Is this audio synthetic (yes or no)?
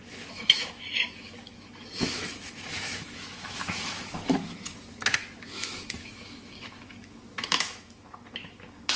yes